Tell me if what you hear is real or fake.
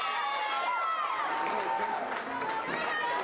real